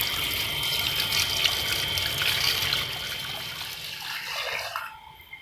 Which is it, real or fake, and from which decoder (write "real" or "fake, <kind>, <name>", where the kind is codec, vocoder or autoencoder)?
real